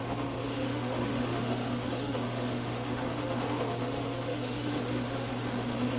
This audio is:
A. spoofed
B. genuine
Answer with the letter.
A